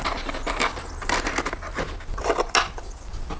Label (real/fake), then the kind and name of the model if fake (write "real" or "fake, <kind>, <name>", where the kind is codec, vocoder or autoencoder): real